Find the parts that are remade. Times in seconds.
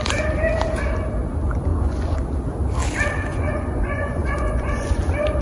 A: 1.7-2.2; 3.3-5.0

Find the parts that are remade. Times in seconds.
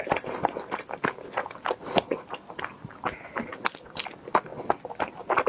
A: none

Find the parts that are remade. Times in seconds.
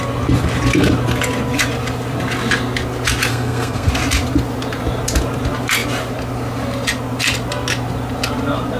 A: 3.3-3.9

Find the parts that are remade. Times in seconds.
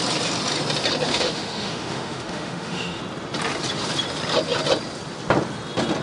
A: 1.1-3.0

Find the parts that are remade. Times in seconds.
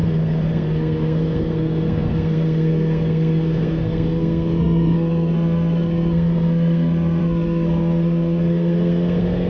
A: 0.0-9.5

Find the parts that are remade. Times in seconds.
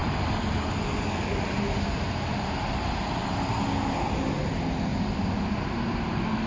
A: none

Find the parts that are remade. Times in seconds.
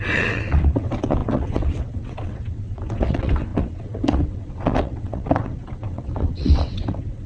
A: 0.0-7.3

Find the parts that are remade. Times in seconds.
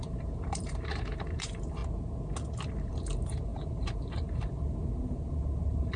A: 0.0-1.8; 2.7-6.0